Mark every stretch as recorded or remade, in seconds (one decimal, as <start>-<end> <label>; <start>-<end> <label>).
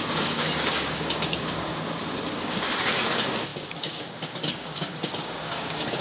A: 0.0-1.7 remade; 1.7-2.3 recorded; 2.3-6.0 remade